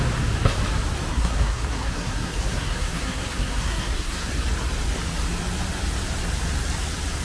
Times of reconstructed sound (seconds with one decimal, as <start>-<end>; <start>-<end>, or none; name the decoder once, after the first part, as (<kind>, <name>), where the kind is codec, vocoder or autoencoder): 1.1-4.3 (codec, SNAC)